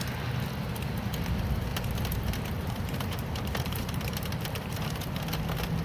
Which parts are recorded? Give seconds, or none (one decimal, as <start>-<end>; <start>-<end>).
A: 0.0-1.7; 5.2-5.8